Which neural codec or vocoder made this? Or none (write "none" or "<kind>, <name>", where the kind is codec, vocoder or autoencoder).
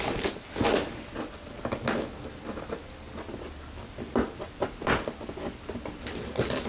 none